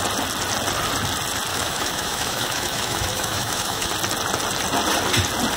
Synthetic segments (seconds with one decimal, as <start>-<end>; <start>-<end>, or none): 1.5-3.9